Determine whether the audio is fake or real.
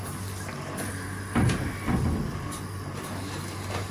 real